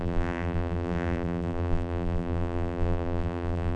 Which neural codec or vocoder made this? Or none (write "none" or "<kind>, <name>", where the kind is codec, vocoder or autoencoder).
vocoder, BigVGAN v2